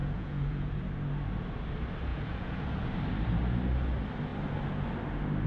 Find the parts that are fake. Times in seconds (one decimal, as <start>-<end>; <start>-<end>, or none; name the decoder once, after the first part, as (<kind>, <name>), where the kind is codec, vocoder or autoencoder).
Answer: 0.0-0.8 (vocoder, Vocos); 2.1-2.6